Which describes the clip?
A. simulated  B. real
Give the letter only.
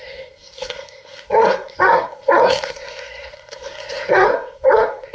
A